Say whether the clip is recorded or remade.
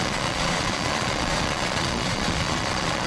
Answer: remade